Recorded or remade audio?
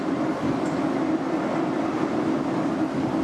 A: recorded